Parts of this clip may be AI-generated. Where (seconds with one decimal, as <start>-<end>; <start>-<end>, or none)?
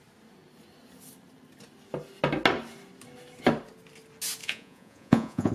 4.4-5.5